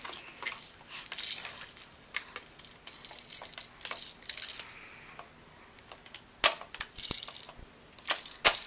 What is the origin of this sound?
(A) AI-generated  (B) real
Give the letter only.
B